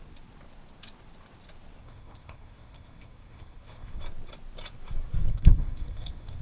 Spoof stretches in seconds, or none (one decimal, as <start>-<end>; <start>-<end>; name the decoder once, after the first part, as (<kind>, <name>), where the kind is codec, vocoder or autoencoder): 1.8-4.0 (codec, SNAC); 5.3-6.4